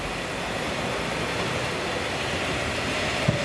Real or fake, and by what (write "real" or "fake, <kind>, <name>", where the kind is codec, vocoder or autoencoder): real